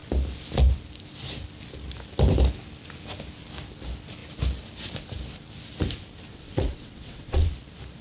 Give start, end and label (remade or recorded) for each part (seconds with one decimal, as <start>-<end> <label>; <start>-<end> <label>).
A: 0.0-6.3 recorded; 6.3-7.5 remade; 7.5-8.0 recorded